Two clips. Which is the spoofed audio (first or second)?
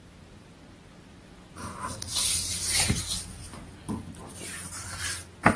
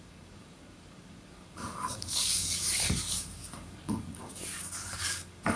second